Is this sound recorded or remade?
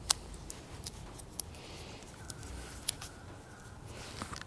recorded